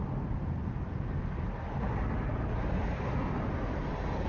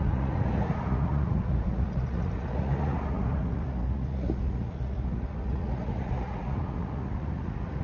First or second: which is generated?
second